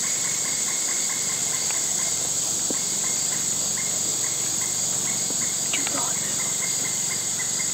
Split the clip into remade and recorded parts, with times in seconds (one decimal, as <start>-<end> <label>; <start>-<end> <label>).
0.0-4.1 recorded; 4.1-4.7 remade; 4.7-7.7 recorded